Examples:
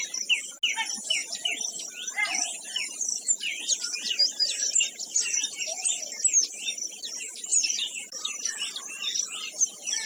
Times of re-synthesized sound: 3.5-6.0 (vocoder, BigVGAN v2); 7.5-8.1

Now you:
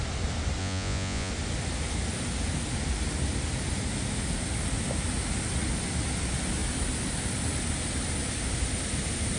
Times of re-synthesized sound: 0.6-1.3 (vocoder, Vocos)

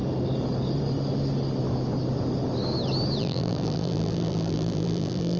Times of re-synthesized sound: 3.2-5.4 (vocoder, BigVGAN v2)